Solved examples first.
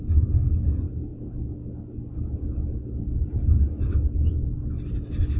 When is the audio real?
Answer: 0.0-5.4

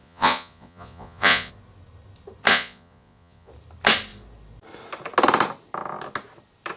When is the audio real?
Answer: 1.5-2.5; 3.5-6.8

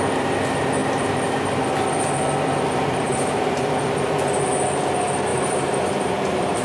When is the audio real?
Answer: 0.0-0.8; 4.4-5.3

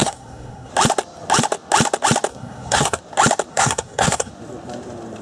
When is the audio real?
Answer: 0.7-2.3; 3.0-3.5; 4.3-5.2

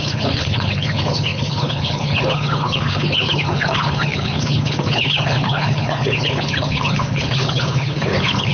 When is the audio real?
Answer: none

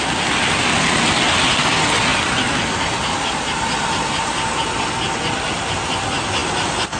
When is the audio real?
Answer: 0.0-7.0